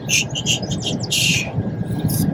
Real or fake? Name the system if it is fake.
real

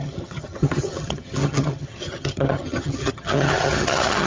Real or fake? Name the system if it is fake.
fake, vocoder, HiFi-GAN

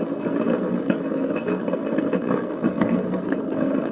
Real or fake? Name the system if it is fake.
fake, codec, SNAC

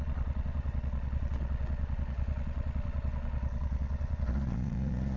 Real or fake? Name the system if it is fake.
fake, vocoder, Vocos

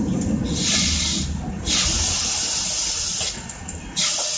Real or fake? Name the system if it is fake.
real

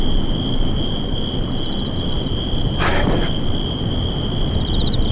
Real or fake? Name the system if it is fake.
fake, vocoder, BigVGAN v2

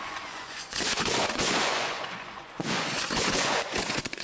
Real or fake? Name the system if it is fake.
fake, vocoder, Vocos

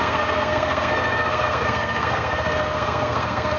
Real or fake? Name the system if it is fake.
fake, codec, SNAC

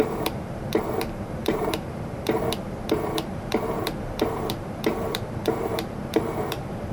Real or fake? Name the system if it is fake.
fake, vocoder, BigVGAN v2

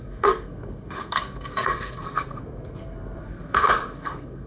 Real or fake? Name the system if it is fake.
fake, codec, SNAC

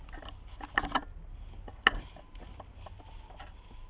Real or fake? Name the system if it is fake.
real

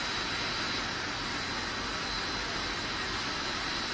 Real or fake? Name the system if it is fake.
real